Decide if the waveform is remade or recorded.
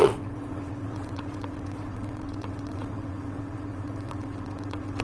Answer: remade